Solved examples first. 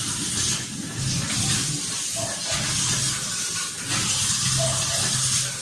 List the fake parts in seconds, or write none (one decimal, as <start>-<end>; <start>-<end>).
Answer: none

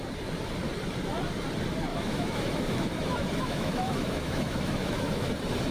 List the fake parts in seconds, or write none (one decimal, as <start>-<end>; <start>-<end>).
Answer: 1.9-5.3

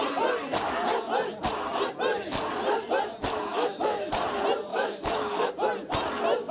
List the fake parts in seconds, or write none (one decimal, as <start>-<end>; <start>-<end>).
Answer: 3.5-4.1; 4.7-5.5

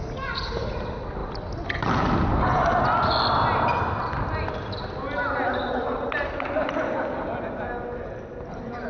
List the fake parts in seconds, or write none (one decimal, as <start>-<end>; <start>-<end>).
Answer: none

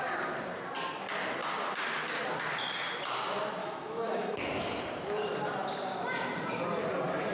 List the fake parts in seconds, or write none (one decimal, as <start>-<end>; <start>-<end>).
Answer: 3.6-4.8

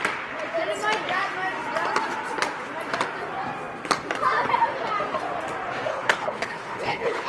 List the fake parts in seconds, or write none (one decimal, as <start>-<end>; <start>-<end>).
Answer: 5.9-7.3

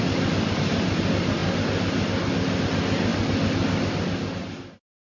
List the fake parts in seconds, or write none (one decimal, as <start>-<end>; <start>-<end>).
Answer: none

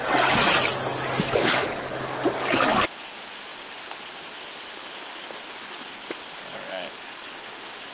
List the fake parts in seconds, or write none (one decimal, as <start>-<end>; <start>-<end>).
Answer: 0.9-2.8; 6.5-7.3